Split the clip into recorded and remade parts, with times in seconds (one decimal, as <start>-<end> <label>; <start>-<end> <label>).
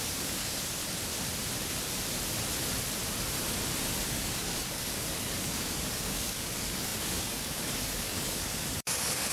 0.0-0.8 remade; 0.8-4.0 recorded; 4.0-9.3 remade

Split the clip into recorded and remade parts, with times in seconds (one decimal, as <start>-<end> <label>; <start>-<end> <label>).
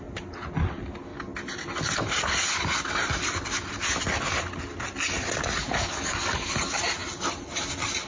0.0-5.6 recorded; 5.6-6.5 remade; 6.5-8.1 recorded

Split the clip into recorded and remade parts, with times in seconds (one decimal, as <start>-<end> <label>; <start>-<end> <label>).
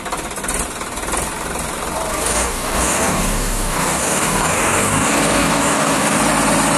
0.0-2.1 recorded; 2.1-6.2 remade; 6.2-6.8 recorded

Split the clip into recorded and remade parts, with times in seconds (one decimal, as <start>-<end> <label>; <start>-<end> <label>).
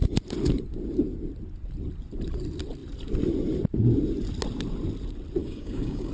0.0-5.4 recorded; 5.4-6.1 remade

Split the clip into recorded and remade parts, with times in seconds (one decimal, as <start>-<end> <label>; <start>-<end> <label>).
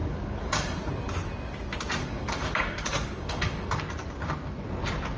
0.0-0.9 remade; 0.9-2.0 recorded; 2.0-3.8 remade; 3.8-5.2 recorded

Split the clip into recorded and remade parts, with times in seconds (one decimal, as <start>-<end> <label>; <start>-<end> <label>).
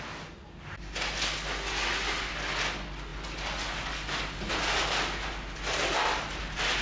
0.0-6.8 recorded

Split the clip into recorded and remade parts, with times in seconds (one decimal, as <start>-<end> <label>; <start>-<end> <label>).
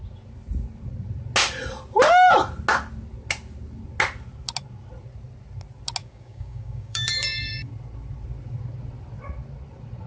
0.0-6.0 recorded; 6.0-7.7 remade; 7.7-10.1 recorded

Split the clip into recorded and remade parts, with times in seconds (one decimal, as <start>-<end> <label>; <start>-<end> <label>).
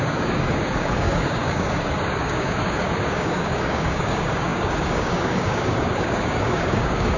0.0-7.2 remade